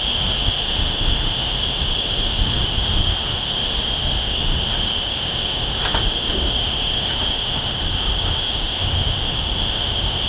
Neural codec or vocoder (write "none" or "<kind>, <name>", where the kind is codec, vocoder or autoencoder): autoencoder, DAC-VAE